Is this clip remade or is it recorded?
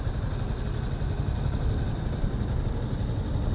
recorded